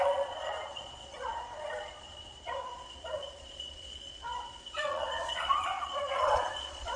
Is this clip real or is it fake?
fake